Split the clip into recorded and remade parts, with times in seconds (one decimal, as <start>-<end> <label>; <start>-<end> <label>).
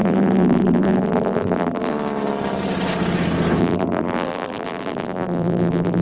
0.0-1.9 remade; 1.9-3.6 recorded; 3.6-6.0 remade